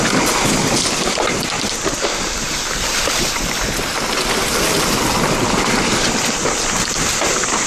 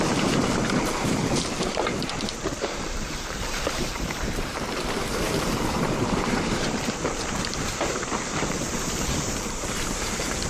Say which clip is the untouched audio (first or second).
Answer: first